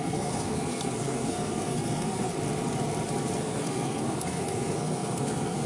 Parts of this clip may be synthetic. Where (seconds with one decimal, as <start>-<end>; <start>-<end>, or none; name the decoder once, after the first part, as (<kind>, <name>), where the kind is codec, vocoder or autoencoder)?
0.0-2.3 (codec, SNAC); 3.4-5.7